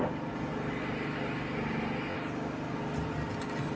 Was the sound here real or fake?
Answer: real